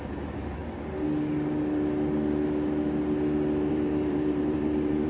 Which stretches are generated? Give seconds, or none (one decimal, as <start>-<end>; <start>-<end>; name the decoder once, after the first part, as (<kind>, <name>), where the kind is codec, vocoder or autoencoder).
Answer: 0.0-0.6 (vocoder, BigVGAN v2); 3.7-5.1